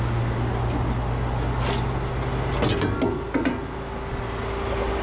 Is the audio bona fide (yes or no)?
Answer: yes